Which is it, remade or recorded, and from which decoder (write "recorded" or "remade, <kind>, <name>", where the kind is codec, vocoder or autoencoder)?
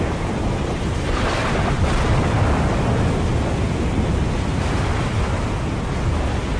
recorded